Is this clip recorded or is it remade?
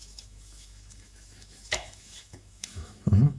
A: remade